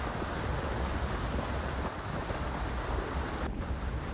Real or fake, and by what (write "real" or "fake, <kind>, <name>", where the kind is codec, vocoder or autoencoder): real